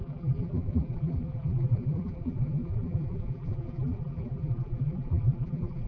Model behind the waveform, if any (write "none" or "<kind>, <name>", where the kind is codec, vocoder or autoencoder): vocoder, BigVGAN v2